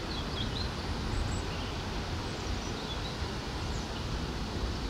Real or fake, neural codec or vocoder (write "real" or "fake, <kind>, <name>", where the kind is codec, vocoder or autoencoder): real